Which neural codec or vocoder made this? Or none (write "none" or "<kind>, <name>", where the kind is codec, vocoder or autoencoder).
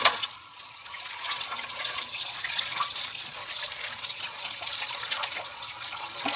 vocoder, Vocos